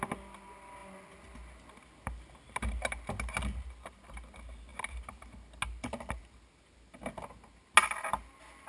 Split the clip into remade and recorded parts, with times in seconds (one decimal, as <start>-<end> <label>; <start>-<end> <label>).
0.0-8.7 recorded